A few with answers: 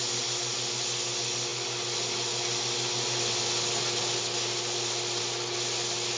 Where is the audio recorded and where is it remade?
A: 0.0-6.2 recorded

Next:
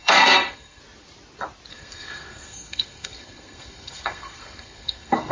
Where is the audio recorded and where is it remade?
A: 0.0-0.8 remade; 0.8-1.7 recorded; 1.7-5.3 remade

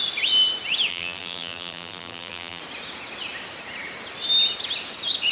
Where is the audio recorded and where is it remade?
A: 0.0-0.9 recorded; 0.9-2.6 remade; 2.6-5.3 recorded

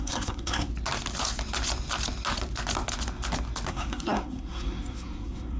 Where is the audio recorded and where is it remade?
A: 0.0-0.7 remade; 0.7-3.7 recorded; 3.7-5.6 remade

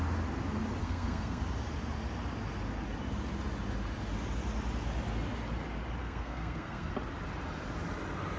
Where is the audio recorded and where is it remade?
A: 0.0-0.8 recorded; 0.8-1.4 remade; 1.4-6.0 recorded; 6.0-6.9 remade; 6.9-8.4 recorded

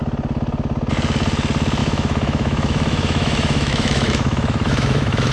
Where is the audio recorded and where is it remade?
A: 0.0-1.8 recorded; 1.8-5.3 remade

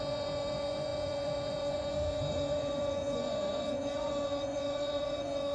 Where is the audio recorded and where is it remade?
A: 0.0-5.5 remade

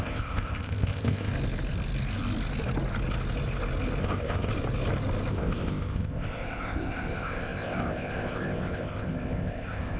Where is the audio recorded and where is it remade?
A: 0.0-1.3 remade; 1.3-4.0 recorded; 4.0-4.5 remade; 4.5-5.3 recorded; 5.3-10.0 remade